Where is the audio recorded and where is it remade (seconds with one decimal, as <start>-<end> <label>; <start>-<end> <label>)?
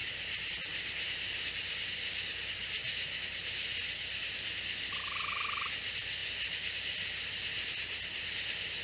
0.0-8.8 recorded